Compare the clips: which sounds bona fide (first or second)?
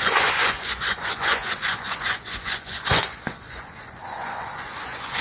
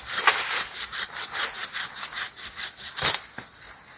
second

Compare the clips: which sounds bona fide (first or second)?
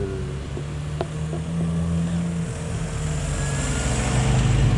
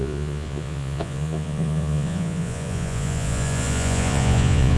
first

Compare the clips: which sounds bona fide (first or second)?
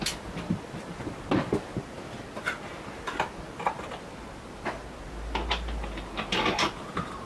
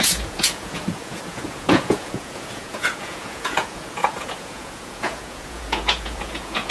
first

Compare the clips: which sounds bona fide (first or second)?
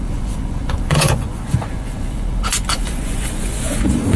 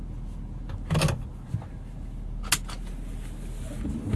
second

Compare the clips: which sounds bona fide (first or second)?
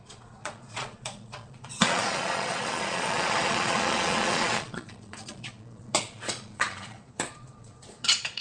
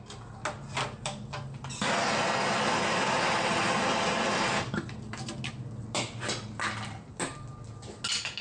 second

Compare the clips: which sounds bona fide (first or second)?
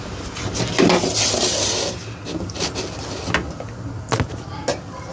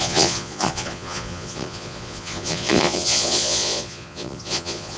first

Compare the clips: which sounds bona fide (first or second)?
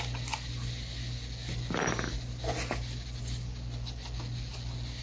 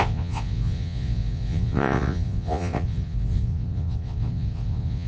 first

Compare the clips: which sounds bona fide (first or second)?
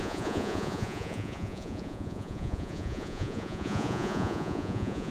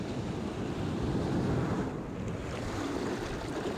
second